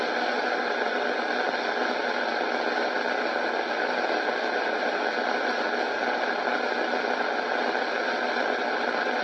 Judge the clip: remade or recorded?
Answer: recorded